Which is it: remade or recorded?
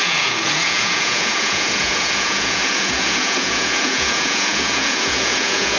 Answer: remade